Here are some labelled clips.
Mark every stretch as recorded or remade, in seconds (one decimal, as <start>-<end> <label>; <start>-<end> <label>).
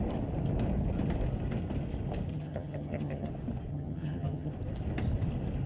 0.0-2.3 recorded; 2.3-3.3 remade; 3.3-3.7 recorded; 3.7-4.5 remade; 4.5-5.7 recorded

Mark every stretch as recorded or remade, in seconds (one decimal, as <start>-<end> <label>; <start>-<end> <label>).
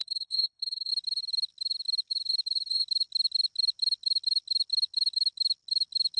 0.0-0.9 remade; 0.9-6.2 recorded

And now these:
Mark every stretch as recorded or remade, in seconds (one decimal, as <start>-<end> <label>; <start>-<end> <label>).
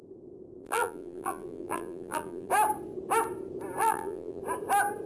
0.0-0.6 recorded; 0.6-2.5 remade; 2.5-3.8 recorded; 3.8-4.4 remade; 4.4-5.1 recorded